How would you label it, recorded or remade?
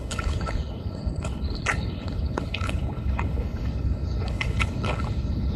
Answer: remade